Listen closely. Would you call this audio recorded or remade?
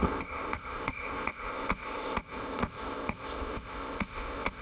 remade